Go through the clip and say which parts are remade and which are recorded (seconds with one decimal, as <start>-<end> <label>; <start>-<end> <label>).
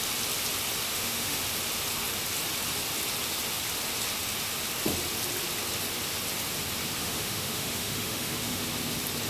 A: 0.0-0.9 recorded; 0.9-1.4 remade; 1.4-7.0 recorded; 7.0-8.6 remade; 8.6-9.3 recorded